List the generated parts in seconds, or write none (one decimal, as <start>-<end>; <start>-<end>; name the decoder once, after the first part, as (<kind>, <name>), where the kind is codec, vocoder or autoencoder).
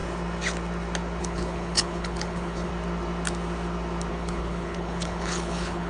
1.2-2.7 (codec, HILCodec); 4.1-5.9